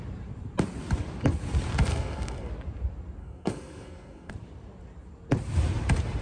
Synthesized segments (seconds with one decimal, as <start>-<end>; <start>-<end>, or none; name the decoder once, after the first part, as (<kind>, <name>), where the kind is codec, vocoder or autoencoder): 1.9-2.5 (codec, SNAC); 3.2-4.3